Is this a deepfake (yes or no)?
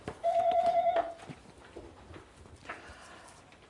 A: yes